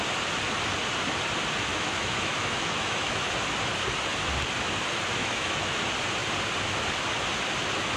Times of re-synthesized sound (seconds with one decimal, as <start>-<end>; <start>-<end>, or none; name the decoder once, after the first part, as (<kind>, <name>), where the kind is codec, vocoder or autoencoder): 1.7-3.3 (autoencoder, DAC-VAE); 5.2-5.8